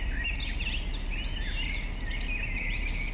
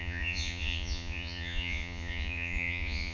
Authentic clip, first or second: first